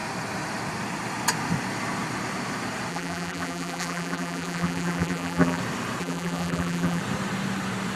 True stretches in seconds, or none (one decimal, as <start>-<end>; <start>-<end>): 0.0-2.9; 5.6-6.0; 7.0-8.0